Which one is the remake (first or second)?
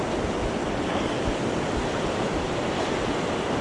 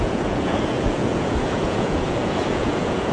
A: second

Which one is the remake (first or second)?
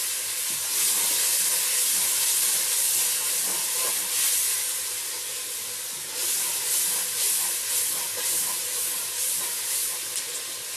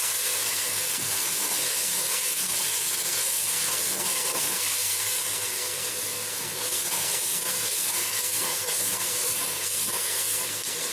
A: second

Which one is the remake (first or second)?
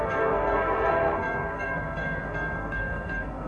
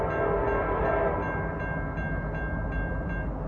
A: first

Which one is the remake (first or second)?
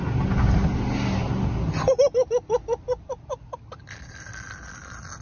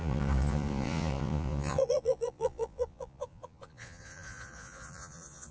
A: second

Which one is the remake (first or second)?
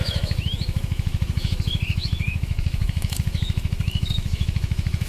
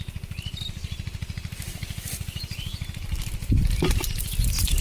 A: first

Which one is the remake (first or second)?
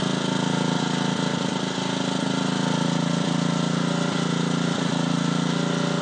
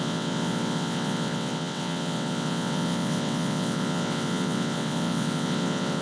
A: second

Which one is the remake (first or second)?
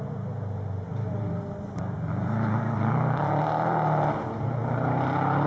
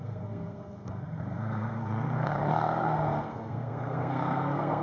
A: second